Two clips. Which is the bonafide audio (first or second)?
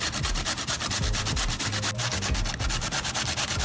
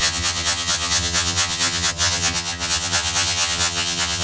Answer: first